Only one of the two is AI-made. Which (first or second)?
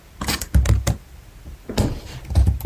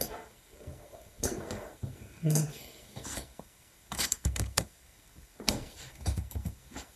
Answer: second